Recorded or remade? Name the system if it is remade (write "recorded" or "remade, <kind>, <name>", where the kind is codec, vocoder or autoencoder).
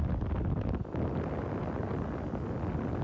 recorded